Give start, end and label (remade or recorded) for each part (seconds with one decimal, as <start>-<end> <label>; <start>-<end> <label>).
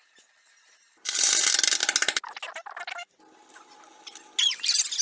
0.0-5.0 recorded